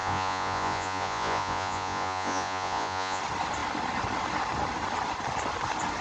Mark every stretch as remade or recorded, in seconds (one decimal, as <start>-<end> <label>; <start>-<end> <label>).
0.0-3.2 remade; 3.2-6.0 recorded